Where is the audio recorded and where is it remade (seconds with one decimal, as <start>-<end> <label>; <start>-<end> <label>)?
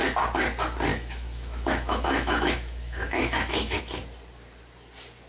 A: 0.0-0.9 recorded; 0.9-3.8 remade; 3.8-5.3 recorded